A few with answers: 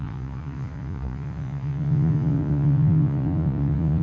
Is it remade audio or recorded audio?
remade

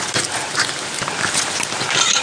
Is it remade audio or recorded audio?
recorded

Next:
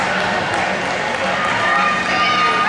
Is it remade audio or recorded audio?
recorded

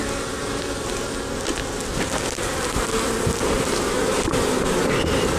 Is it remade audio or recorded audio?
recorded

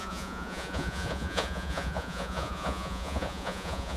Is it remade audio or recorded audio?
remade